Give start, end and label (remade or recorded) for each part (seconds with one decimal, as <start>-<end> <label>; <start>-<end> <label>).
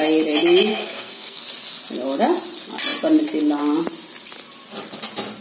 0.0-0.7 recorded; 0.7-1.4 remade; 1.4-5.4 recorded